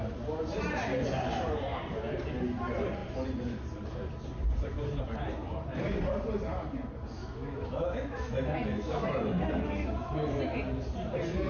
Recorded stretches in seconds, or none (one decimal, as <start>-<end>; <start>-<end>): 0.0-7.2; 10.4-11.5